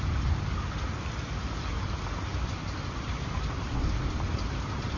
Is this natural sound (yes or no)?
yes